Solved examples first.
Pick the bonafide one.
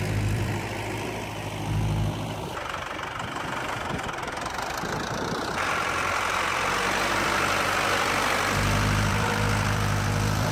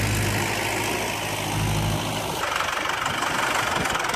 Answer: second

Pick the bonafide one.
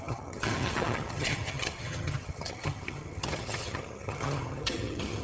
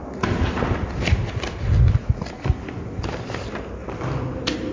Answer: second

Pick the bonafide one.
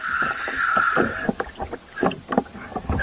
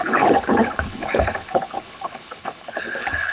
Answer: first